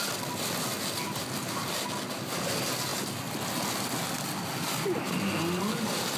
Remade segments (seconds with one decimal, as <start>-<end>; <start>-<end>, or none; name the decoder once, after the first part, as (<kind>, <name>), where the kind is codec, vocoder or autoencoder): none